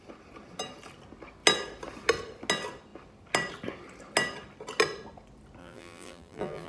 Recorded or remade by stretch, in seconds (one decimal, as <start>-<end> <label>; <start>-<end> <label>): 0.0-5.6 recorded; 5.6-6.7 remade